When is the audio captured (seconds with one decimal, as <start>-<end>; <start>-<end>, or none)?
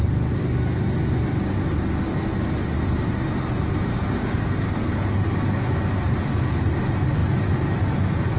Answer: 0.0-3.9; 4.4-8.4